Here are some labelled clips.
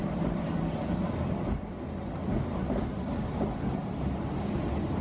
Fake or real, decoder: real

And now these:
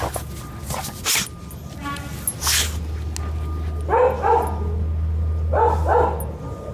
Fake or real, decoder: real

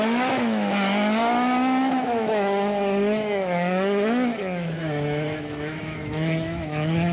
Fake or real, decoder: fake, autoencoder, DAC-VAE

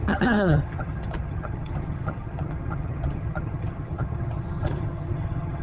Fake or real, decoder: fake, vocoder, HiFi-GAN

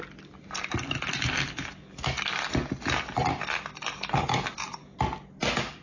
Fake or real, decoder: real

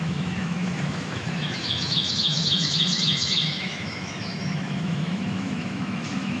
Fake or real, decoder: fake, autoencoder, DAC-VAE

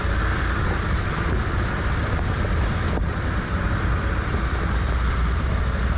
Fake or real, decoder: fake, vocoder, BigVGAN v2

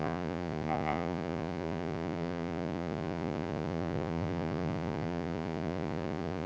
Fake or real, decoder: fake, vocoder, Vocos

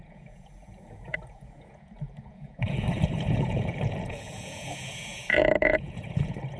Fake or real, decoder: fake, vocoder, Vocos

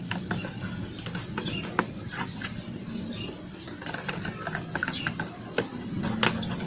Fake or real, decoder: real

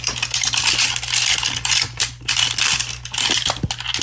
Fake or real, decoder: real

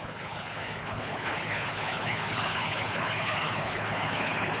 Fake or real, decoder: fake, codec, HILCodec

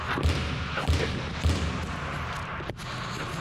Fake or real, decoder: real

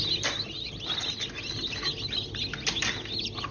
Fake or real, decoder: real